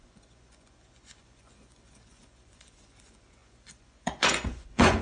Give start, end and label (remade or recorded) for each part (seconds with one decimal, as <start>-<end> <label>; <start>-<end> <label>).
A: 0.0-5.0 remade